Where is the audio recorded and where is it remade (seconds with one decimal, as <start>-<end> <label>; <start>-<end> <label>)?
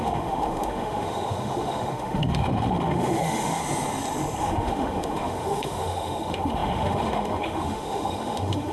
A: 0.0-3.6 remade; 3.6-4.4 recorded; 4.4-8.7 remade